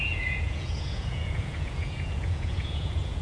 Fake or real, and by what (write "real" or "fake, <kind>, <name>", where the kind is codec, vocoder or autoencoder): fake, vocoder, Vocos